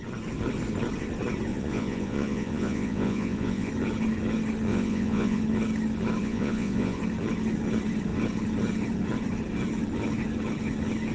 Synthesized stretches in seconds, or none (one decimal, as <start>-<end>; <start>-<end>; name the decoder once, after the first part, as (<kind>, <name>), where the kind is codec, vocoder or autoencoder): 1.5-3.7 (vocoder, Vocos); 4.7-5.4; 6.2-7.0